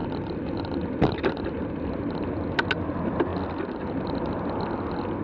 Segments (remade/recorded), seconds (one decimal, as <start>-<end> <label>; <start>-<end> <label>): 0.0-1.9 remade; 1.9-5.2 recorded